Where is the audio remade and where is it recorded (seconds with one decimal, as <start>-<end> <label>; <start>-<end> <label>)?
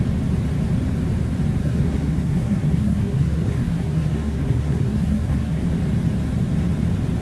0.0-1.6 recorded; 1.6-5.6 remade; 5.6-7.2 recorded